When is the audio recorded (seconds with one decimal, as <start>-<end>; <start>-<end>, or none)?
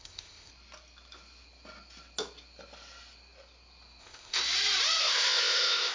0.5-4.0; 4.4-5.0